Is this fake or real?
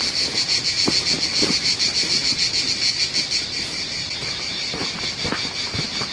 real